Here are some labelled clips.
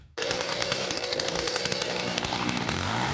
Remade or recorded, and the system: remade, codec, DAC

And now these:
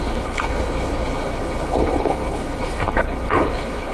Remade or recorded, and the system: remade, codec, HILCodec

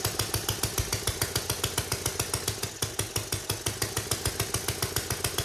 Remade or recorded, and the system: recorded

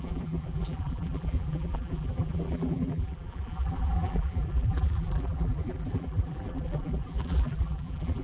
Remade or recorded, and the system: remade, vocoder, BigVGAN v2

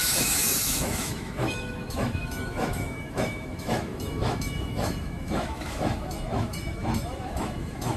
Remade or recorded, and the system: remade, autoencoder, DAC-VAE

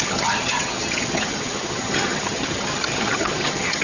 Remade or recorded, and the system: remade, vocoder, HiFi-GAN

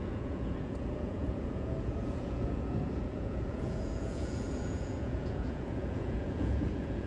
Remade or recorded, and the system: remade, vocoder, Vocos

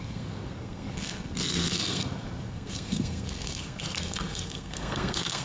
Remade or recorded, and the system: remade, codec, SNAC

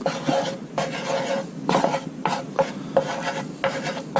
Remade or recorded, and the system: recorded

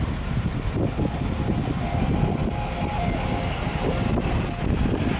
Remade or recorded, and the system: recorded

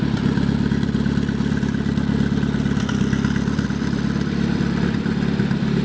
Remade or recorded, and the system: remade, vocoder, BigVGAN v2